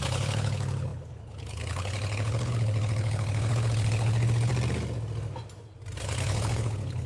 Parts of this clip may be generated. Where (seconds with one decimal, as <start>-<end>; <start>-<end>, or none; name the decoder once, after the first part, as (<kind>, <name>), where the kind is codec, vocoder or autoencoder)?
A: 0.0-4.5 (codec, HILCodec); 6.0-7.1